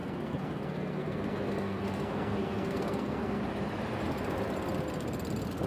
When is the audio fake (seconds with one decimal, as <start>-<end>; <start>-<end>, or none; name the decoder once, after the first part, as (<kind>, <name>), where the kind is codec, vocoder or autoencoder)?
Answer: 0.0-3.4 (codec, SNAC)